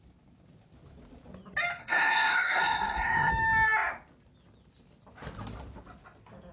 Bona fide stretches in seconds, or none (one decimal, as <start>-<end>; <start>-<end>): 0.0-1.8; 3.3-6.5